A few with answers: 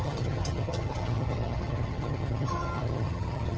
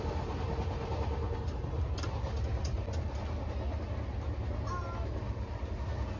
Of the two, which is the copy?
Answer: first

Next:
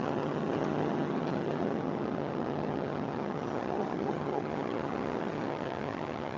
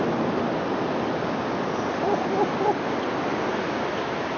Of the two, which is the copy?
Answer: first